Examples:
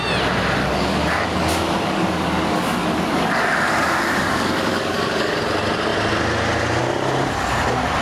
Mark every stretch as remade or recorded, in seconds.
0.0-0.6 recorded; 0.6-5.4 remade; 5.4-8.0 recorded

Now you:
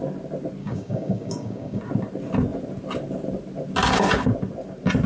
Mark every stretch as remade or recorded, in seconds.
0.0-0.6 recorded; 0.6-1.8 remade; 1.8-5.1 recorded

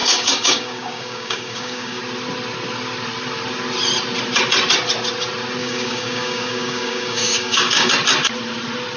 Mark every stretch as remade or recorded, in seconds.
0.0-2.0 remade; 2.0-5.6 recorded; 5.6-7.9 remade; 7.9-9.0 recorded

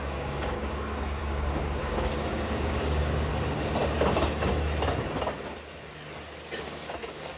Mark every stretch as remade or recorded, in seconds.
0.0-3.3 remade; 3.3-6.6 recorded; 6.6-7.4 remade